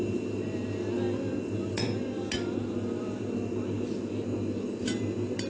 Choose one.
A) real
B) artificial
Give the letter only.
A